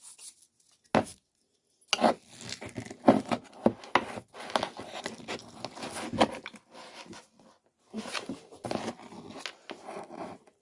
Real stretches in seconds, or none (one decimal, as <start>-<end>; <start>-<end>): 0.0-10.6